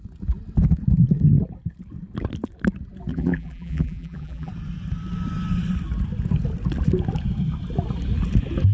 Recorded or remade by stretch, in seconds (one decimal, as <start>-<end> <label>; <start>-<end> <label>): 0.0-3.1 recorded; 3.1-4.5 remade; 4.5-8.7 recorded